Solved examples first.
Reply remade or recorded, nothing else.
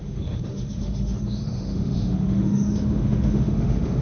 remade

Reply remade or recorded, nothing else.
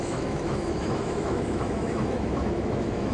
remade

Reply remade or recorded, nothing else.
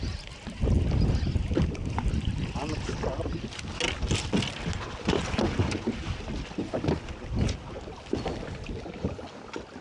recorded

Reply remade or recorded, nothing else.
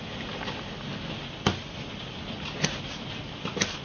recorded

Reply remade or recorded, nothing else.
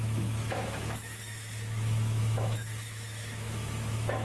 remade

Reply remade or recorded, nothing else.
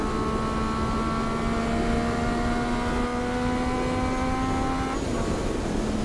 recorded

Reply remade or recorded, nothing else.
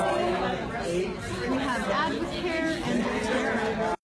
recorded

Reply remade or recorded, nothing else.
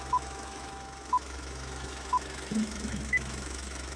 remade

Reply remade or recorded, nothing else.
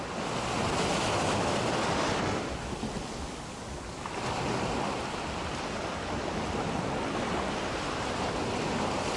recorded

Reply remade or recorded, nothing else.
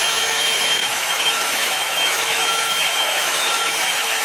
remade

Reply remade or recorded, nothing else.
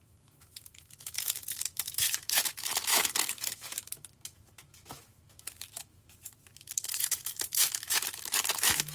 remade